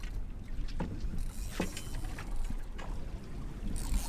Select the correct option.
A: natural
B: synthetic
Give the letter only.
A